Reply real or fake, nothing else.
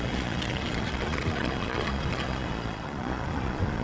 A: fake